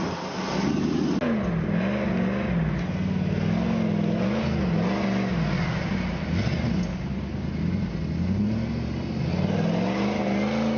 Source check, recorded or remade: recorded